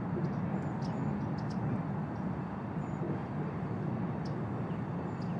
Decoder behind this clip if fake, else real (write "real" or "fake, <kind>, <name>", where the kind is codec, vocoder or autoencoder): real